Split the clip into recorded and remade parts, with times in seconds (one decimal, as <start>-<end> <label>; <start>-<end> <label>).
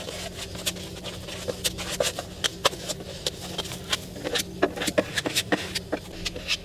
0.0-5.1 recorded; 5.1-5.7 remade; 5.7-6.6 recorded